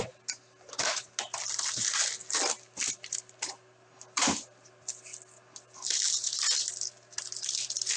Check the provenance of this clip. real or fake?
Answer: real